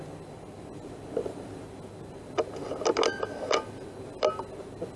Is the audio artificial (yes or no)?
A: no